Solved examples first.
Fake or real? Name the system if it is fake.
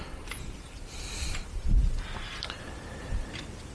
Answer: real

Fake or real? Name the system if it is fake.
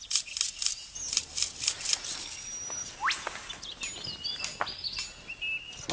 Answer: real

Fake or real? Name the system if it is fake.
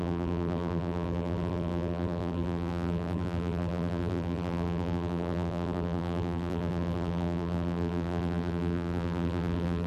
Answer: fake, vocoder, BigVGAN v2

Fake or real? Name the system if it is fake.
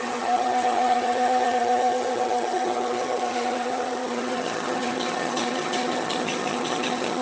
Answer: fake, vocoder, HiFi-GAN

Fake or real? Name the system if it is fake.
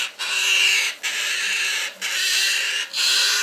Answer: real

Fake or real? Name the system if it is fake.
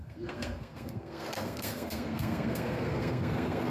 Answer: fake, codec, SNAC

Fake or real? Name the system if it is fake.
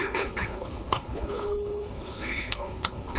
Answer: fake, codec, HILCodec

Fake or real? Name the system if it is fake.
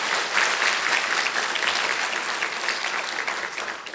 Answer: real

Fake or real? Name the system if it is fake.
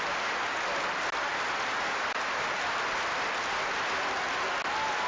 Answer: real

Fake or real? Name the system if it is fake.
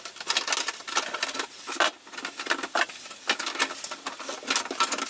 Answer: real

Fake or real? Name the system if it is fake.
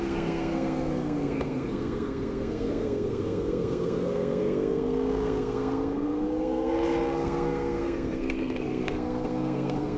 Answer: fake, codec, SNAC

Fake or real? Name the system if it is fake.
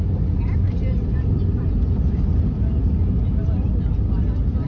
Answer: real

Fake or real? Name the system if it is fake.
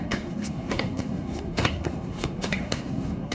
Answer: fake, codec, SNAC